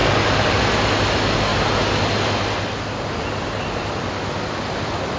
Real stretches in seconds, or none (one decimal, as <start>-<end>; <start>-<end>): 0.0-5.2